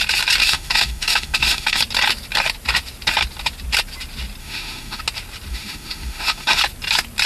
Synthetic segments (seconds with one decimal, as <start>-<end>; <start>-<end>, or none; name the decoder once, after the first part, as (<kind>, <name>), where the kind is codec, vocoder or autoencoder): 0.4-1.8 (autoencoder, DAC-VAE); 4.4-5.0; 5.5-6.6